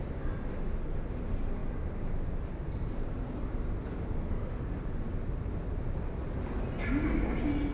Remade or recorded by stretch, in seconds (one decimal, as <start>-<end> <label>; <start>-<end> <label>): 0.0-7.7 recorded